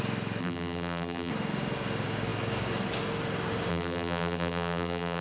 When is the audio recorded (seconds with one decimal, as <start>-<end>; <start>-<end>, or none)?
0.0-0.4; 1.3-3.7

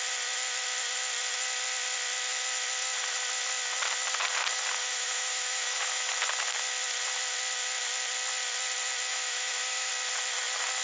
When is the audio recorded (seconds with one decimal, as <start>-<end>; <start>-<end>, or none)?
0.0-4.8; 6.1-9.1; 9.9-10.8

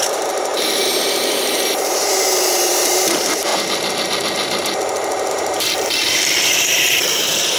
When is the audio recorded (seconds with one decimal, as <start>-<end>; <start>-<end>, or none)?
3.5-5.3

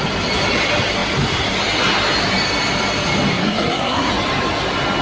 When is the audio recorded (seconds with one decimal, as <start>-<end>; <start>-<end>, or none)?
0.0-3.3; 4.1-5.0

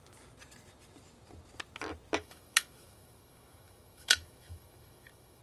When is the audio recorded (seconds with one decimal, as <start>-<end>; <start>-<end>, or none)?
0.0-2.2

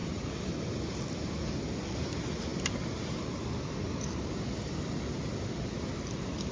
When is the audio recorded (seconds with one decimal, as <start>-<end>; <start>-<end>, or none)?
0.0-6.5

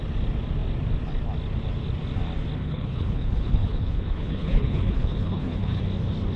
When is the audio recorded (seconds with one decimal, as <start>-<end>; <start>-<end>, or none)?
0.0-2.6; 5.8-6.4

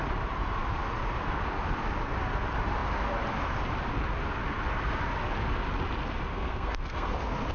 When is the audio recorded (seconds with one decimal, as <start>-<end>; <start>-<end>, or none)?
0.0-6.3; 7.1-7.5